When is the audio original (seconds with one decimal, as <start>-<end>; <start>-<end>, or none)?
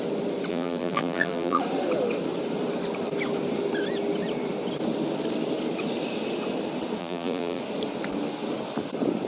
0.0-0.5; 1.6-7.0; 7.6-9.3